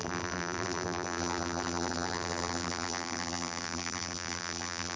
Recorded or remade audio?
remade